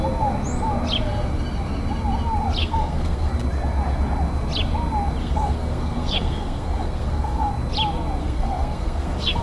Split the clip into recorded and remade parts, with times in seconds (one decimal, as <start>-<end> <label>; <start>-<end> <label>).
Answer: 0.0-2.6 recorded; 2.6-3.3 remade; 3.3-5.2 recorded; 5.2-7.5 remade; 7.5-8.2 recorded; 8.2-9.4 remade

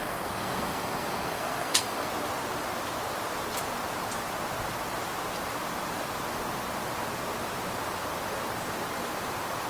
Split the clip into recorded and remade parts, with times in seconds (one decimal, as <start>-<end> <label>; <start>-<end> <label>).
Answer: 0.0-2.1 remade; 2.1-9.7 recorded

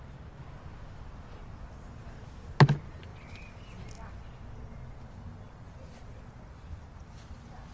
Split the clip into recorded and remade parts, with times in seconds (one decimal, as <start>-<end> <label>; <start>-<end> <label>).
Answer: 0.0-7.7 recorded